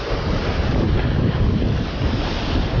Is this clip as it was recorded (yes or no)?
yes